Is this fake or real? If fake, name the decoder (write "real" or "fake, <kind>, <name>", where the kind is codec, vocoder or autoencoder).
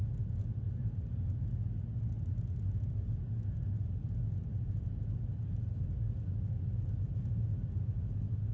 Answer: real